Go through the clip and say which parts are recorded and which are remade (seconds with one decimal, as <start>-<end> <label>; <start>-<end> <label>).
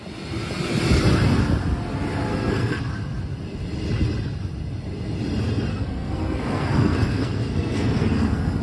0.0-2.3 recorded; 2.3-2.8 remade; 2.8-5.7 recorded; 5.7-8.6 remade